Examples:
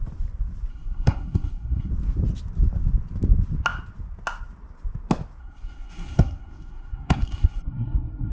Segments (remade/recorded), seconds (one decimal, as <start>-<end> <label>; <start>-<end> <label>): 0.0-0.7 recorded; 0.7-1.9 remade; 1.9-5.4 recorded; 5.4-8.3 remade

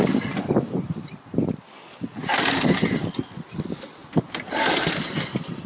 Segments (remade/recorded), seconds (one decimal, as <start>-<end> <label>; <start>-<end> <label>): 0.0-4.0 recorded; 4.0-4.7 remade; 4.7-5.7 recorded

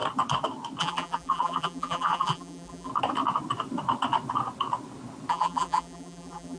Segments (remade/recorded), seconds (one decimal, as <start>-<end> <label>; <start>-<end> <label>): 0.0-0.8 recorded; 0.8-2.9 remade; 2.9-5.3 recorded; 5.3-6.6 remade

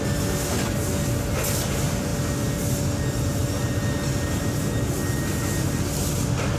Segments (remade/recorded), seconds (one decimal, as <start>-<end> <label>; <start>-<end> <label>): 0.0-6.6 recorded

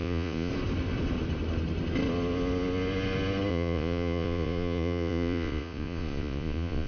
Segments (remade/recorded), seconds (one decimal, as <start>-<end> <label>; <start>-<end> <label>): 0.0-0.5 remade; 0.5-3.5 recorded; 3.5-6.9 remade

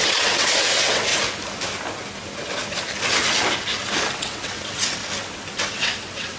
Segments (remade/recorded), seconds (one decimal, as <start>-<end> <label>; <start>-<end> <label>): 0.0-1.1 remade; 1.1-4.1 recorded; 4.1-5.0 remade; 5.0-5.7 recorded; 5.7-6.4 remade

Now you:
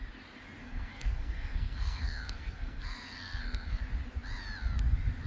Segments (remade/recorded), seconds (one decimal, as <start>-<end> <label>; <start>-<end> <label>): 0.0-0.6 recorded; 0.6-3.8 remade; 3.8-5.3 recorded